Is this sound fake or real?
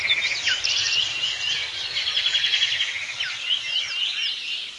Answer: real